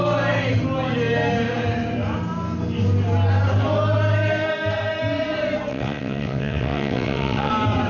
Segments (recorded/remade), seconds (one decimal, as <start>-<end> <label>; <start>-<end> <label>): 0.0-5.7 recorded; 5.7-7.5 remade; 7.5-7.9 recorded